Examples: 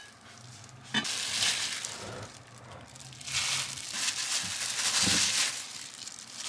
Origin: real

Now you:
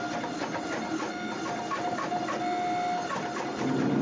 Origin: real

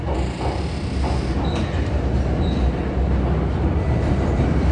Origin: real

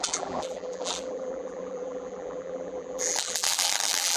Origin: fake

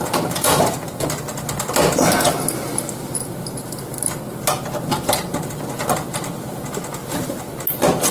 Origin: real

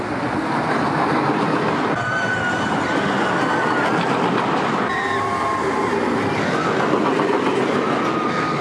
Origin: real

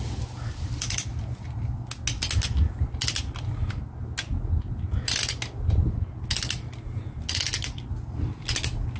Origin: real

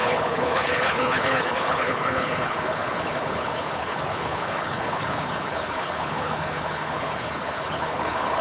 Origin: fake